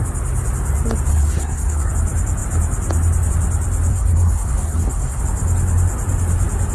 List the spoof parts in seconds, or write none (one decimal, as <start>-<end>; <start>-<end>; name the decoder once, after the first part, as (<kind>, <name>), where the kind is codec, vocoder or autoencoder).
1.1-1.9 (codec, SNAC); 3.9-5.2